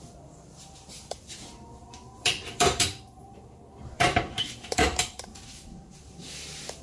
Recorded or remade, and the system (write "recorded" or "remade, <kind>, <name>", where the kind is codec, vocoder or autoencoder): remade, vocoder, BigVGAN v2